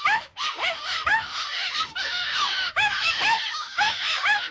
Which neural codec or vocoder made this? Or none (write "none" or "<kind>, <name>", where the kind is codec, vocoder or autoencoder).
autoencoder, DAC-VAE